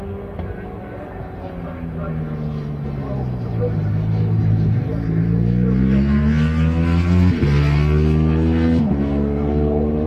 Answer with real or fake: real